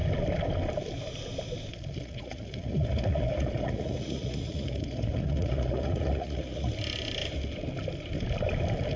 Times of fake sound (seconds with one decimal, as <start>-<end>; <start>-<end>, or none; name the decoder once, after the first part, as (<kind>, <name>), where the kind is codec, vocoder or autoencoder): 1.7-6.7 (vocoder, Vocos)